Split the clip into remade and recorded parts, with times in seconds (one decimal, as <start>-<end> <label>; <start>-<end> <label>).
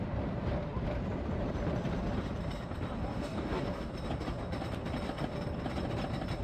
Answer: 0.0-3.1 recorded; 3.1-3.9 remade; 3.9-6.4 recorded